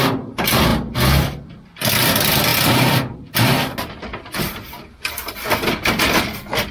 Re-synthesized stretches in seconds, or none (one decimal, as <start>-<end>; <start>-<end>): 2.5-3.5